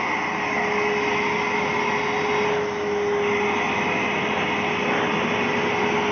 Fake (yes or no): no